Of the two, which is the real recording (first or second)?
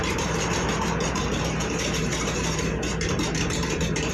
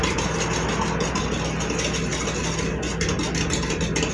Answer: second